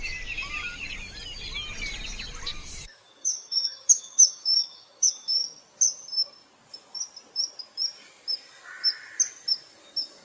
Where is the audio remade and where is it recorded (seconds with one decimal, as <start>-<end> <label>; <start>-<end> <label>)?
0.0-2.5 recorded; 2.5-5.6 remade; 5.6-10.2 recorded